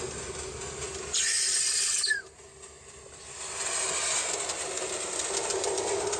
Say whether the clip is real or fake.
real